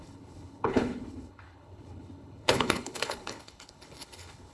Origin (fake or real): fake